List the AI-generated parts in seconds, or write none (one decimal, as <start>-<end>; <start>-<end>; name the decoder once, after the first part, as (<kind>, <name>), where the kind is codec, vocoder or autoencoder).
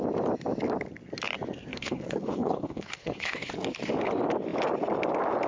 1.7-3.5 (codec, HILCodec)